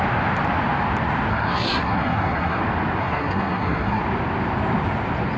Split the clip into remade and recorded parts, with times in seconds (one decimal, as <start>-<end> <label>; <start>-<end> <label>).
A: 0.0-1.3 recorded; 1.3-2.6 remade; 2.6-3.0 recorded; 3.0-4.0 remade; 4.0-5.4 recorded